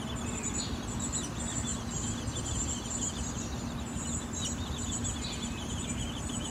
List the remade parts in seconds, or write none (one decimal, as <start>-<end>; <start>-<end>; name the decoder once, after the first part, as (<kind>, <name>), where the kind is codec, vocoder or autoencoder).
none